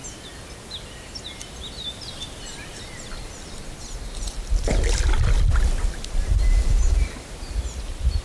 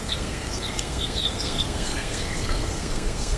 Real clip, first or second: first